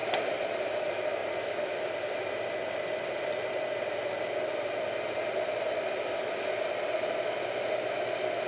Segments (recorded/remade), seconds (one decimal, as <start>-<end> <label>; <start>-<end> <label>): 0.0-8.5 recorded